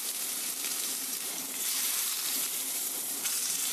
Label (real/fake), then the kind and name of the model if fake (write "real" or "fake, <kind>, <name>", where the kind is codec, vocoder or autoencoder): fake, vocoder, BigVGAN v2